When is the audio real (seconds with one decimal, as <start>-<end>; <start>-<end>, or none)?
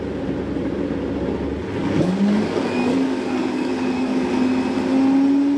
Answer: 0.0-1.8; 4.3-5.6